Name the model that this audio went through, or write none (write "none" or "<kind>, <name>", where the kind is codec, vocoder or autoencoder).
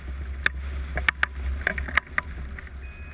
none